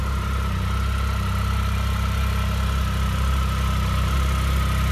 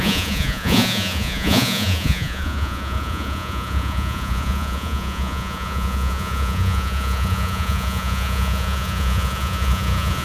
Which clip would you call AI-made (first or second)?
second